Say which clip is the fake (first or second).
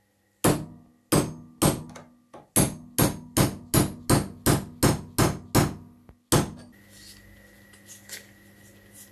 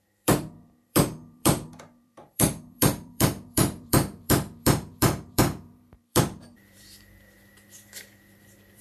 second